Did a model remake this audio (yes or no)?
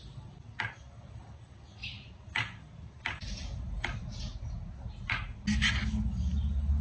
no